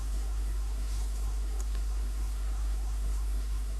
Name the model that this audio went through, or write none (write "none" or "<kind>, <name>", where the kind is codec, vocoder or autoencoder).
codec, SNAC